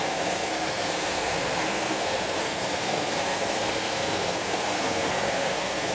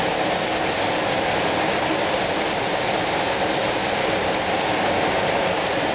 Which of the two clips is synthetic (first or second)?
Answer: first